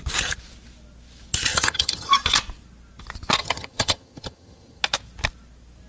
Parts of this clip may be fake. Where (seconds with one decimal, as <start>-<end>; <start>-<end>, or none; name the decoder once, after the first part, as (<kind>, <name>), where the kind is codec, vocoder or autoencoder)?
1.5-2.1 (vocoder, HiFi-GAN); 3.4-4.8